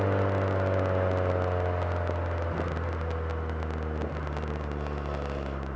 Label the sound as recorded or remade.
recorded